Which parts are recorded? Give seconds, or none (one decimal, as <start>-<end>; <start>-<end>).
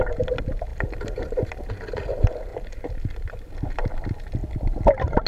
0.0-0.7; 1.7-2.5; 3.5-5.3